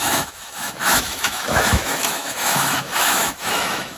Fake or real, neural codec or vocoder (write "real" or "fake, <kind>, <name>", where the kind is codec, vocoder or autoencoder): fake, autoencoder, DAC-VAE